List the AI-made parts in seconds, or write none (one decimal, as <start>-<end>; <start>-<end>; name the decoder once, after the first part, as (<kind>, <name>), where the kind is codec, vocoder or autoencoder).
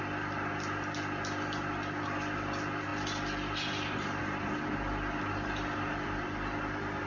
none